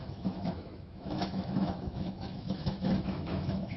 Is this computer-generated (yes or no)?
yes